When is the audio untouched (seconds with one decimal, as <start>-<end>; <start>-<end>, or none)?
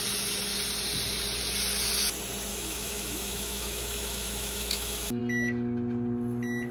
0.0-2.5; 5.2-6.7